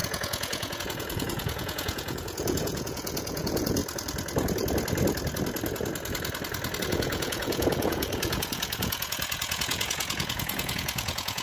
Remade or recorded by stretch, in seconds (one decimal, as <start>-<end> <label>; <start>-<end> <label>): 0.0-3.8 remade; 3.8-6.8 recorded; 6.8-11.4 remade